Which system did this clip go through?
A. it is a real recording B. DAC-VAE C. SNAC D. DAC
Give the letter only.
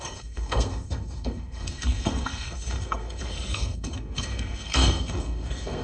C